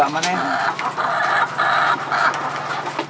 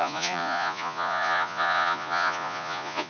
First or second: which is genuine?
first